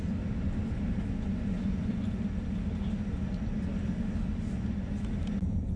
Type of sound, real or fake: real